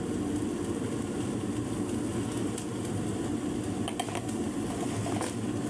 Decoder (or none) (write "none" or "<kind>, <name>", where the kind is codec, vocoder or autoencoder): none